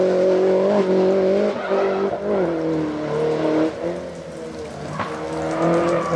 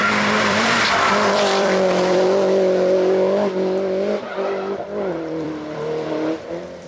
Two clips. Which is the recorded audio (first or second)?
first